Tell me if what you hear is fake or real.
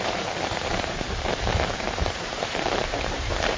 fake